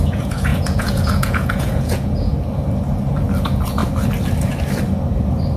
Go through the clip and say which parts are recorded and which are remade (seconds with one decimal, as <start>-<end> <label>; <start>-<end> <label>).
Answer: 0.0-2.3 remade; 2.3-3.4 recorded; 3.4-3.8 remade; 3.8-5.6 recorded